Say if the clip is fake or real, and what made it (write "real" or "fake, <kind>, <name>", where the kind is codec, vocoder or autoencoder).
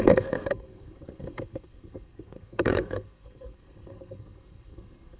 fake, codec, SNAC